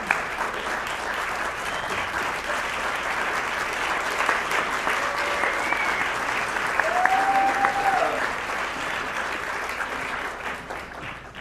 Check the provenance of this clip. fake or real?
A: real